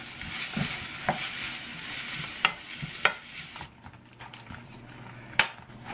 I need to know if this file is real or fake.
fake